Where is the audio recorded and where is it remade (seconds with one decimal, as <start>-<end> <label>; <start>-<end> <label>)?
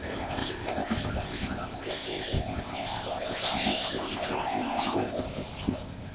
0.0-6.1 remade